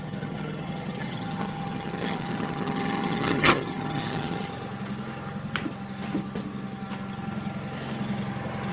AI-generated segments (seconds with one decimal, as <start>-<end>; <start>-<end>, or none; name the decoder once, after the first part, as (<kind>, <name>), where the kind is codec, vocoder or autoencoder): 0.0-4.5 (vocoder, HiFi-GAN)